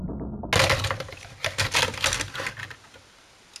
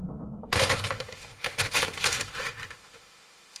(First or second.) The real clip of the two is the first